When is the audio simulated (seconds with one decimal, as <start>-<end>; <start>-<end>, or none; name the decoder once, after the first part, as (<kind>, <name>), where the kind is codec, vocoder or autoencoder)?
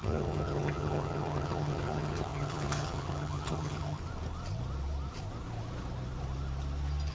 0.0-4.0 (vocoder, HiFi-GAN)